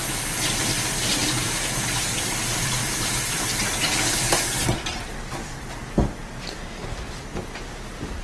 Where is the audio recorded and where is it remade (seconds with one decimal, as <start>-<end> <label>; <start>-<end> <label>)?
0.0-1.2 recorded; 1.2-6.1 remade; 6.1-8.2 recorded